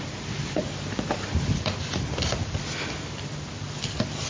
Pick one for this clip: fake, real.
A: real